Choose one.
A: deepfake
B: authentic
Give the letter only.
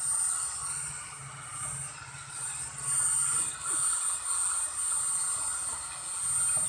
B